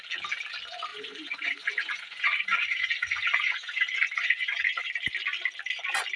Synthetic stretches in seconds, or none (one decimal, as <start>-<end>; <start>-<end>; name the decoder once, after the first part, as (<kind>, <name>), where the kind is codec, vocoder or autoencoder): 0.9-4.6 (vocoder, Vocos)